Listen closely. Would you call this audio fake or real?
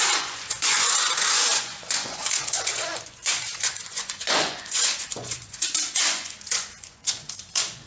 fake